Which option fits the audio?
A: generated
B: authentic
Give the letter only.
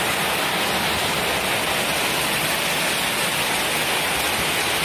B